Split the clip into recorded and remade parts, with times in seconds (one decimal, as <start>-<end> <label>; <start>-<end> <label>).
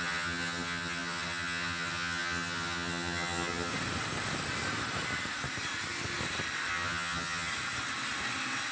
0.0-3.7 remade; 3.7-6.7 recorded; 6.7-7.5 remade; 7.5-8.7 recorded